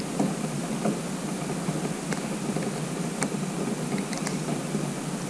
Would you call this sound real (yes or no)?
yes